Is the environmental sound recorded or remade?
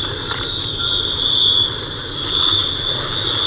recorded